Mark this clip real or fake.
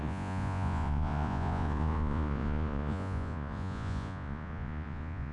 fake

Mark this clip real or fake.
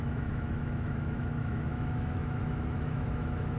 fake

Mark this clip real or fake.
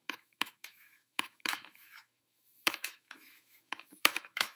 fake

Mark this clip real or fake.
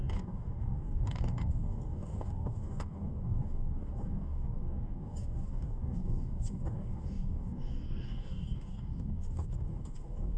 fake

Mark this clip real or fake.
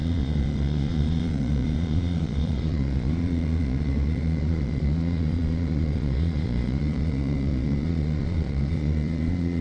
fake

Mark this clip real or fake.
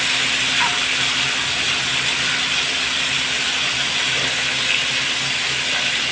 real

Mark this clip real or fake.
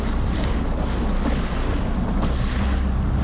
real